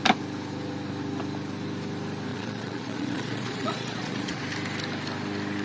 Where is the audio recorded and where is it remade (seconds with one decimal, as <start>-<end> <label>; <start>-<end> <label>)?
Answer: 0.0-2.3 recorded; 2.3-4.4 remade; 4.4-5.6 recorded